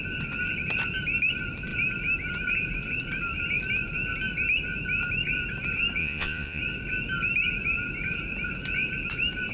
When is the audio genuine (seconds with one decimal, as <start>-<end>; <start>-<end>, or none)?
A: 0.0-6.0; 6.6-9.5